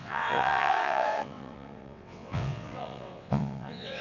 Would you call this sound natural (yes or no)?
no